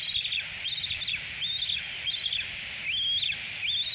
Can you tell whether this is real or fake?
real